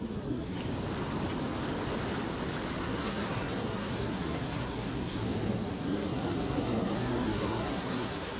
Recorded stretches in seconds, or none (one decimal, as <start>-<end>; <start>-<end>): 0.6-2.8